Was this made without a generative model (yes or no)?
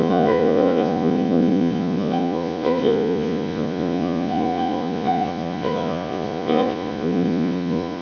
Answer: no